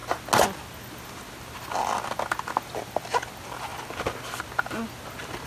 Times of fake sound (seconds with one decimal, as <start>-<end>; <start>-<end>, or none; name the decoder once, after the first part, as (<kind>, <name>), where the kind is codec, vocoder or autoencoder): none